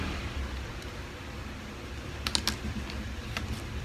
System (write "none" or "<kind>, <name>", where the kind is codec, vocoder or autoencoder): none